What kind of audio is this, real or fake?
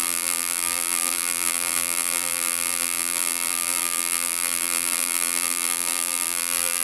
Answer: fake